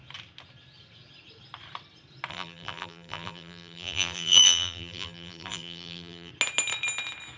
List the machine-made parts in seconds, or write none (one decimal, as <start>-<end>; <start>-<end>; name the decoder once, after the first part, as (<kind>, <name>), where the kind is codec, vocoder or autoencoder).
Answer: 2.3-6.3 (vocoder, BigVGAN v2)